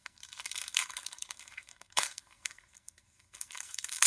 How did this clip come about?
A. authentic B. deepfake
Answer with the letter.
B